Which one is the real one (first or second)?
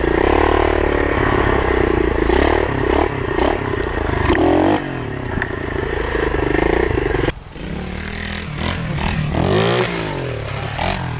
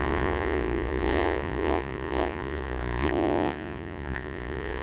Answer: first